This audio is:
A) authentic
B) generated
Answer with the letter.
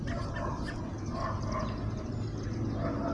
A